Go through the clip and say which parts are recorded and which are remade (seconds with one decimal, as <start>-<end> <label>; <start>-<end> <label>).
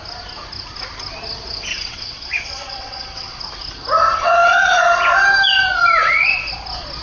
0.0-1.7 recorded; 1.7-3.4 remade; 3.4-4.1 recorded; 4.1-4.8 remade; 4.8-6.0 recorded; 6.0-6.5 remade; 6.5-7.0 recorded